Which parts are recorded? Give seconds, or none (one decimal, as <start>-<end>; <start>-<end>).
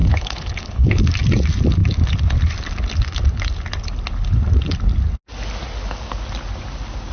1.0-7.1